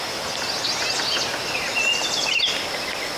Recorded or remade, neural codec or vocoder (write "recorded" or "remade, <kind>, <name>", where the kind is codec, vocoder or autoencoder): recorded